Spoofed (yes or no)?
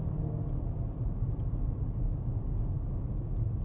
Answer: no